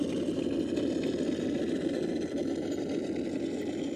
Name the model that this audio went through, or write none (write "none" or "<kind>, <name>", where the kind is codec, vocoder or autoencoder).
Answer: none